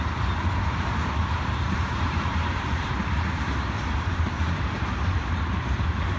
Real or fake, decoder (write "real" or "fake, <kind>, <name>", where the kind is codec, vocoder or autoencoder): fake, vocoder, BigVGAN v2